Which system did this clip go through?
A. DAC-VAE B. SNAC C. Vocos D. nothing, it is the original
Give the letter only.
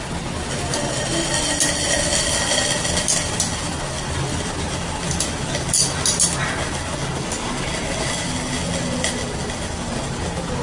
D